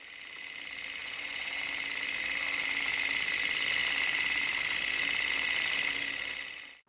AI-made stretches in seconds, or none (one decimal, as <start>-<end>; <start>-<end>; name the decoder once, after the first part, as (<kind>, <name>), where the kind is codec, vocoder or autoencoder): 1.0-1.6 (vocoder, Vocos)